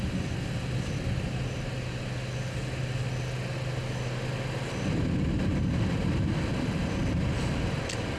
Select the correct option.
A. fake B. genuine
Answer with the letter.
B